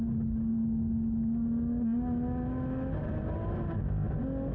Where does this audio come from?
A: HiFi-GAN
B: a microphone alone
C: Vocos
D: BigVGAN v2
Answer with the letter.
B